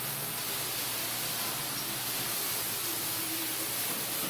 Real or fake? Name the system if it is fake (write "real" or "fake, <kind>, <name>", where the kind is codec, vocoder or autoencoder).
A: real